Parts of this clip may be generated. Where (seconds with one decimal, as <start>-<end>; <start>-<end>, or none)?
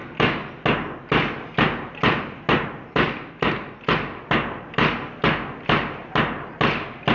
none